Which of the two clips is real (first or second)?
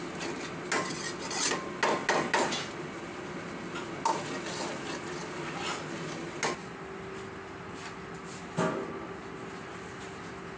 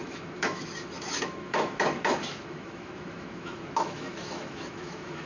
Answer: first